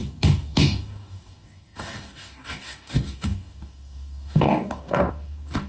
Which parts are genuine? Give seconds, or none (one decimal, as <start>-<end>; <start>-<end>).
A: none